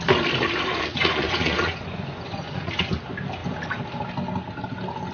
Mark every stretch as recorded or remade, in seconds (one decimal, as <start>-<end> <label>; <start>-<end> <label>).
0.0-0.7 recorded; 0.7-2.7 remade; 2.7-5.1 recorded